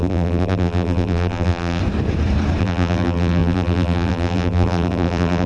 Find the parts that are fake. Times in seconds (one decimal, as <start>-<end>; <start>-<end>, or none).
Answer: 0.0-1.8; 2.6-5.5